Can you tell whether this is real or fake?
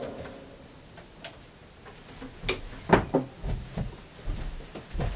real